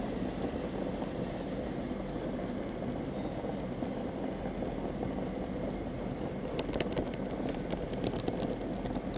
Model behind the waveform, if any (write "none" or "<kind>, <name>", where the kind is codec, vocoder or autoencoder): none